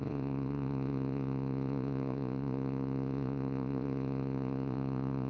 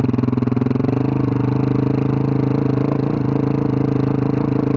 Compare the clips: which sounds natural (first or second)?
second